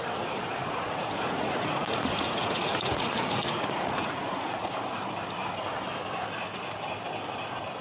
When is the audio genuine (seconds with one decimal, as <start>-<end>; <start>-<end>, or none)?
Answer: 0.0-0.6; 4.7-7.8